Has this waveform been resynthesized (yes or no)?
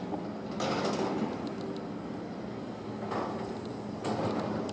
no